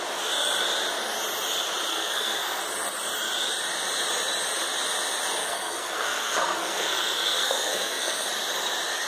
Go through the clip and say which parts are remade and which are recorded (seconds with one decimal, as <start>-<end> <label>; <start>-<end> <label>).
0.0-1.9 recorded; 1.9-2.6 remade; 2.6-5.4 recorded; 5.4-8.3 remade; 8.3-9.1 recorded